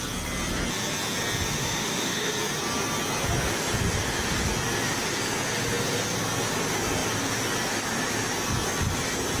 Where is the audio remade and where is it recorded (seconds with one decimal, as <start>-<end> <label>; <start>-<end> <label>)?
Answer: 0.0-1.6 recorded; 1.6-2.3 remade; 2.3-9.4 recorded